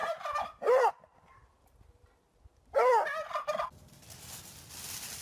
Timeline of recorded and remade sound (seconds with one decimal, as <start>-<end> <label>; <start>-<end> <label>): 0.0-0.9 remade; 0.9-5.2 recorded